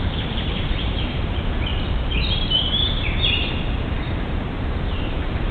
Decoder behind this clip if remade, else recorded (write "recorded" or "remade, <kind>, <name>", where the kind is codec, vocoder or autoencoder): remade, vocoder, BigVGAN v2